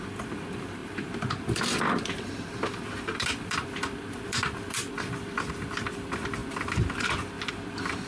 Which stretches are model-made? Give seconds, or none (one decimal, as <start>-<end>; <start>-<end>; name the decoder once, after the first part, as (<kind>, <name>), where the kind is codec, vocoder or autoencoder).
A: 0.0-8.1 (vocoder, BigVGAN v2)